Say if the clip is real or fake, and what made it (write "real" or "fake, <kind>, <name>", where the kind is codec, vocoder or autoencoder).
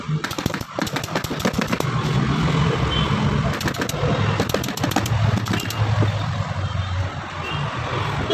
real